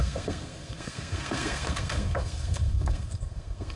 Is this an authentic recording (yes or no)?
no